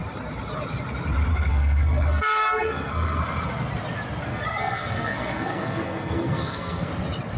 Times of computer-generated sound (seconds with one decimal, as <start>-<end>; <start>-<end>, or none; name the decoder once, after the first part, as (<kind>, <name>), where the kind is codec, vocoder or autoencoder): 1.3-3.2 (codec, SNAC); 4.3-6.9